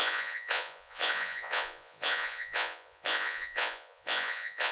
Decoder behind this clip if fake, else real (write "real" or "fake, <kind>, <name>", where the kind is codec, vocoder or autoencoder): fake, vocoder, Vocos